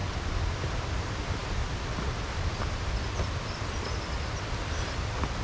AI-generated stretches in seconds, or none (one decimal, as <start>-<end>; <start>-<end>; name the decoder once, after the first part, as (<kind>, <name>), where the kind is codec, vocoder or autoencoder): 0.0-0.6 (vocoder, BigVGAN v2)